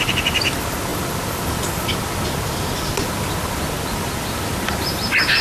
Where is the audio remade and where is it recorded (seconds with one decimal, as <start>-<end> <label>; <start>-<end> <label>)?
0.0-5.4 recorded